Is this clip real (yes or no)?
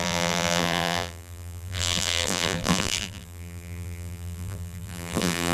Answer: no